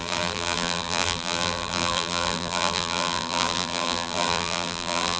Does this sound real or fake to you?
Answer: fake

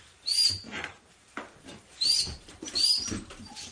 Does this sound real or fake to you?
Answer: fake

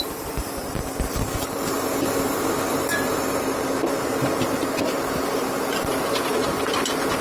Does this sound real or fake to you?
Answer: fake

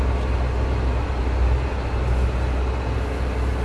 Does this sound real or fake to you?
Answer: real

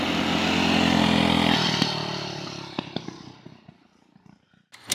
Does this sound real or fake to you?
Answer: real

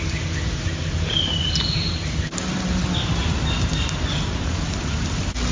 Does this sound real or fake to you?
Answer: real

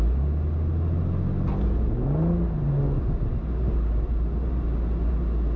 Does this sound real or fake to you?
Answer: real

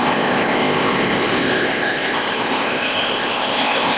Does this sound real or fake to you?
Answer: fake